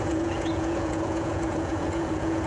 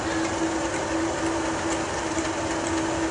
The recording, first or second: second